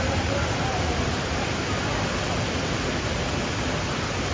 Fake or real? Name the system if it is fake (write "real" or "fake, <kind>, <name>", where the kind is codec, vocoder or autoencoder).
real